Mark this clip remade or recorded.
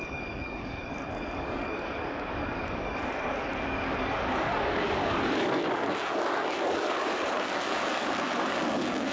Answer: remade